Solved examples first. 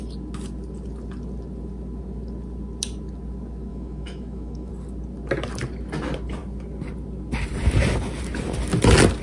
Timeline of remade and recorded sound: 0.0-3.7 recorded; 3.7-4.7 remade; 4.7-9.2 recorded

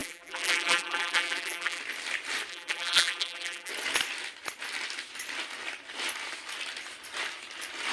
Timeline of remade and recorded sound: 0.0-1.8 remade; 1.8-2.5 recorded; 2.5-3.7 remade; 3.7-7.9 recorded

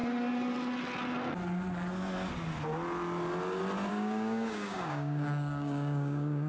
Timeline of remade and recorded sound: 0.0-3.9 recorded; 3.9-6.5 remade

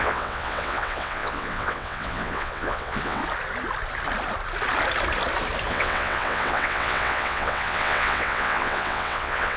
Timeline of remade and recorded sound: 0.0-3.2 remade; 3.2-5.7 recorded; 5.7-9.6 remade

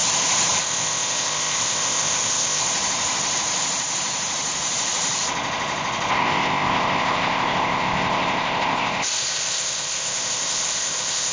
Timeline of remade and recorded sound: 0.0-0.6 recorded; 0.6-2.6 remade; 2.6-6.1 recorded; 6.1-11.3 remade

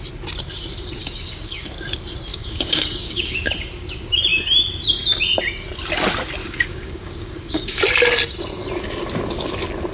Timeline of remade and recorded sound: 0.0-1.0 recorded; 1.0-1.7 remade; 1.7-2.3 recorded; 2.3-3.5 remade; 3.5-6.4 recorded; 6.4-7.8 remade; 7.8-9.9 recorded

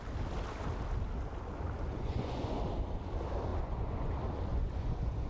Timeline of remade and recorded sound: 0.0-1.9 recorded; 1.9-2.6 remade; 2.6-3.5 recorded; 3.5-4.1 remade; 4.1-4.5 recorded; 4.5-5.3 remade